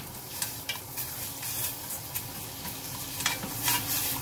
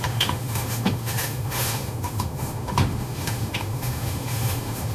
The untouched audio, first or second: first